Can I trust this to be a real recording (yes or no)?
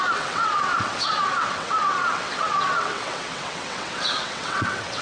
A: no